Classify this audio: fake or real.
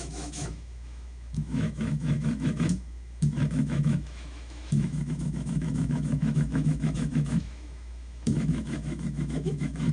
fake